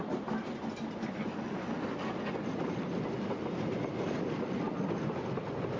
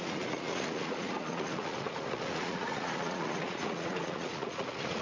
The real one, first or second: first